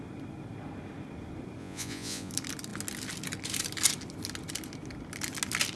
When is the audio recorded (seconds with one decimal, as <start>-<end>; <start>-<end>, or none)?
0.0-1.6; 2.3-5.8